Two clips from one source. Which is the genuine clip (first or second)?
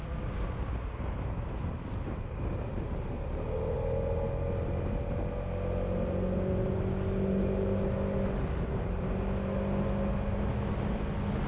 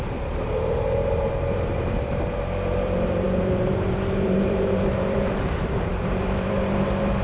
first